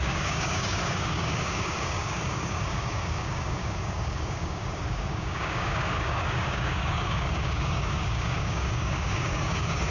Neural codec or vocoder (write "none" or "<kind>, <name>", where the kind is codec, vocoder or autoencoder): codec, DAC